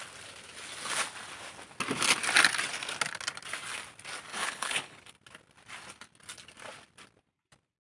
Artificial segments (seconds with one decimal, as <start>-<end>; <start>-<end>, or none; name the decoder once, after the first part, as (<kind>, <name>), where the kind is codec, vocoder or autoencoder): 4.3-5.1 (codec, HILCodec)